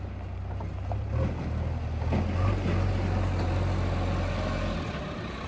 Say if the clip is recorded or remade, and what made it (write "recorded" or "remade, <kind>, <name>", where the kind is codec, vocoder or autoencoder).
recorded